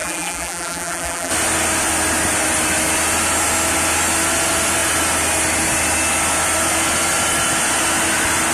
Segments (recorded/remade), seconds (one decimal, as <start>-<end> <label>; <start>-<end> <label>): 0.0-1.3 remade; 1.3-8.5 recorded